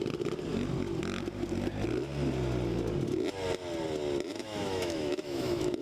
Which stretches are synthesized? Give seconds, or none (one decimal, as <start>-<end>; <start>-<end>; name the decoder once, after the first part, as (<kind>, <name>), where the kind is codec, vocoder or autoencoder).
4.3-5.8 (autoencoder, DAC-VAE)